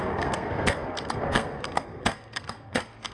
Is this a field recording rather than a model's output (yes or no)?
no